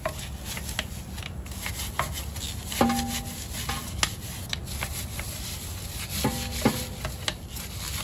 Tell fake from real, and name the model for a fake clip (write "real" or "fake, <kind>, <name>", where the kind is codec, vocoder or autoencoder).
real